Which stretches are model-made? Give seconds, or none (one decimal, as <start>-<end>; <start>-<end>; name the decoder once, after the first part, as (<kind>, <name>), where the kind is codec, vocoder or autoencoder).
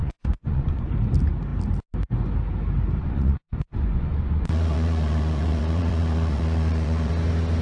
0.0-0.9 (vocoder, Vocos); 3.0-7.1